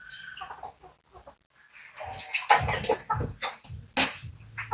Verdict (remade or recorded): recorded